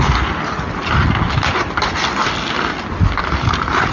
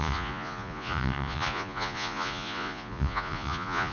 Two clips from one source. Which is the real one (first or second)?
first